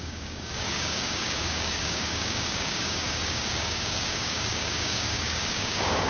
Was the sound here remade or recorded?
remade